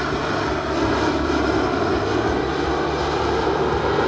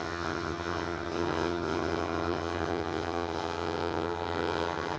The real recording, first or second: first